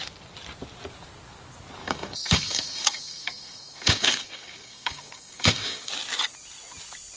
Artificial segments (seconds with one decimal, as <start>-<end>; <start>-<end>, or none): 1.8-5.9